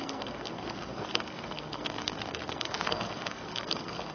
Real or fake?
fake